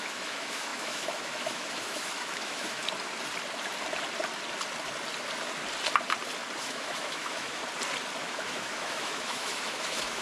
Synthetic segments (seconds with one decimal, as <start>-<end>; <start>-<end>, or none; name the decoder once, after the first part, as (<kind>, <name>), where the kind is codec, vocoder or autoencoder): 0.0-2.8 (autoencoder, DAC-VAE); 6.6-7.6; 8.2-10.2